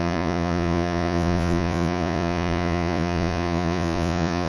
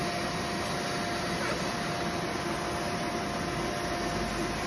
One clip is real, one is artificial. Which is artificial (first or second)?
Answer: first